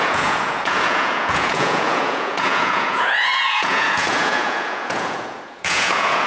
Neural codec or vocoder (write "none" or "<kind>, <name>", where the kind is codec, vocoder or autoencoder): vocoder, Vocos